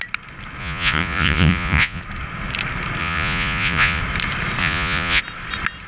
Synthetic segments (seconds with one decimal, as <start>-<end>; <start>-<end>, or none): 0.6-2.0; 3.0-4.0; 4.6-5.2